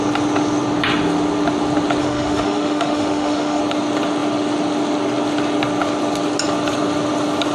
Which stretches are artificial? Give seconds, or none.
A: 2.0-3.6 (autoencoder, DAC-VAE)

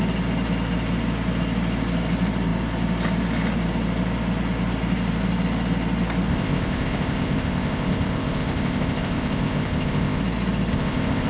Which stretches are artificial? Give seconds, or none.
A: 6.3-10.2 (codec, ZipCodec); 10.7-11.3

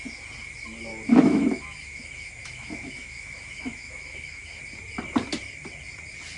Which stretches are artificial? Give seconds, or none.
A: 0.9-4.6 (autoencoder, DAC-VAE)

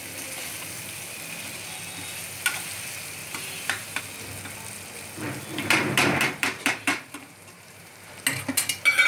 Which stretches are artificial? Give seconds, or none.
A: 3.2-4.0 (vocoder, BigVGAN v2); 5.5-8.1